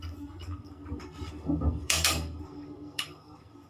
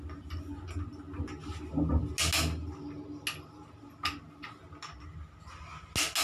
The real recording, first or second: second